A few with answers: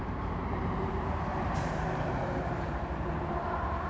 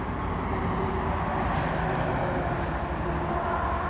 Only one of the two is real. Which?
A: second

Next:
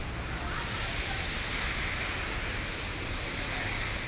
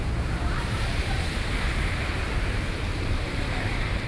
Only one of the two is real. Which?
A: first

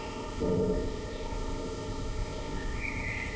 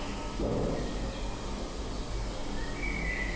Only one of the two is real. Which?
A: second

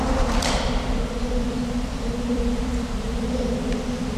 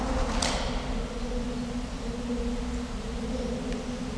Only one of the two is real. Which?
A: second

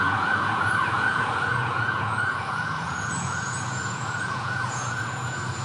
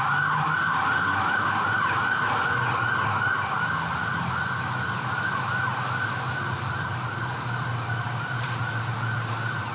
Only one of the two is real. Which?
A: second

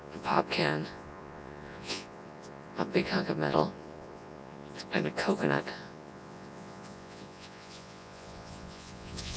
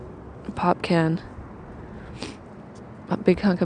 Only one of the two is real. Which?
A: second